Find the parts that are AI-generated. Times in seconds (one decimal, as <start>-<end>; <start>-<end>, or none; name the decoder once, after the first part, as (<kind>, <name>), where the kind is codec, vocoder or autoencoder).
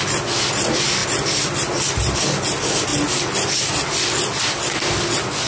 none